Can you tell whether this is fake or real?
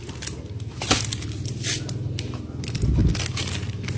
real